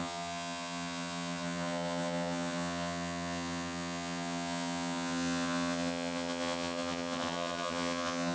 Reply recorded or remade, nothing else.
remade